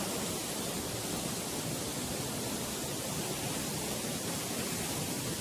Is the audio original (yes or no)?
yes